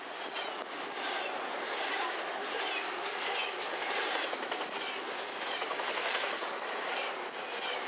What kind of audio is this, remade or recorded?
recorded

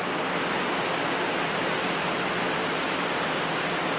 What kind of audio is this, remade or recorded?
recorded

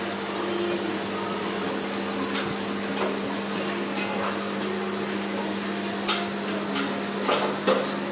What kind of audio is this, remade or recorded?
recorded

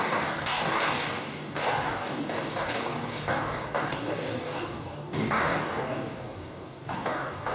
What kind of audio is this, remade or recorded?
remade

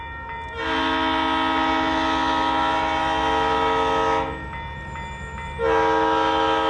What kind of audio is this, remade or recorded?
recorded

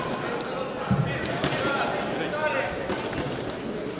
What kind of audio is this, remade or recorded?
recorded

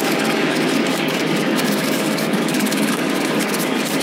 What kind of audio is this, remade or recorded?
remade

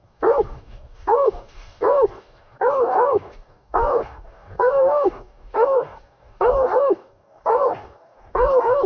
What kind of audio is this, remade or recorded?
remade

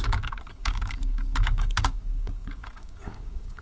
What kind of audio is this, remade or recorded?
remade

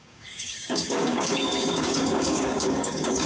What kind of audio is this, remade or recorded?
remade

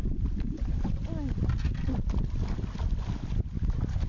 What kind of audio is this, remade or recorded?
recorded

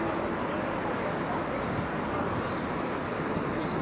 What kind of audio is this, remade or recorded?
recorded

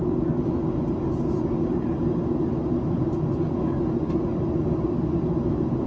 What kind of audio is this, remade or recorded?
recorded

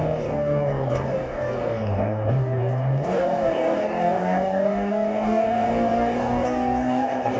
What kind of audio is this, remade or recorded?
remade